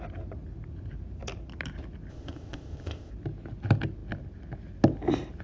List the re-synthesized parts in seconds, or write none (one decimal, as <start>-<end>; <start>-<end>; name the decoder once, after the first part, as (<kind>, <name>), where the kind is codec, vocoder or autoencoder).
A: 2.1-3.1 (codec, ZipCodec)